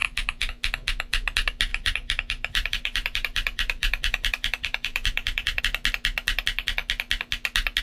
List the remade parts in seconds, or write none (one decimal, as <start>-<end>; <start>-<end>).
0.0-0.5; 1.7-5.6

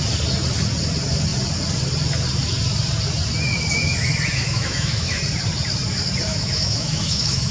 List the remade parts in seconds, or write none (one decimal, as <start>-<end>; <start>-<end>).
4.3-5.2; 6.3-7.5

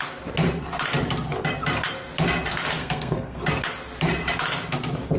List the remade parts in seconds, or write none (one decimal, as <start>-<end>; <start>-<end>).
2.8-3.4

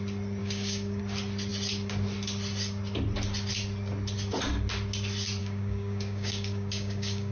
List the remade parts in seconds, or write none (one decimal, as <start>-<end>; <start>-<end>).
0.4-1.0; 5.4-7.3

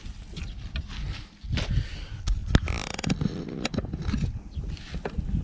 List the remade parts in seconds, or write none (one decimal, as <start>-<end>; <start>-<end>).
none

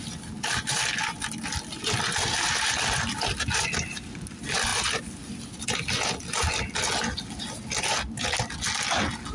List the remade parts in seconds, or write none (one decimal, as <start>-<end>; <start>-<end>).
none